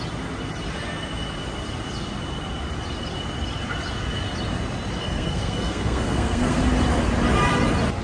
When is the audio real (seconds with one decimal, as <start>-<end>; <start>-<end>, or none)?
0.0-5.0; 6.6-8.0